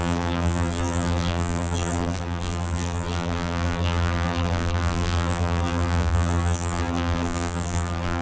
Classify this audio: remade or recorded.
remade